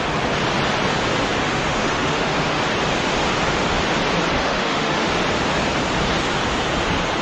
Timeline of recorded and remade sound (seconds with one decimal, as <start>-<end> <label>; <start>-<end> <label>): 0.0-1.4 recorded; 1.4-2.6 remade; 2.6-4.3 recorded; 4.3-5.1 remade; 5.1-7.2 recorded

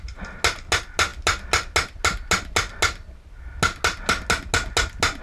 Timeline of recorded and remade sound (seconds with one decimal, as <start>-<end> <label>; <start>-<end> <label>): 0.0-5.2 recorded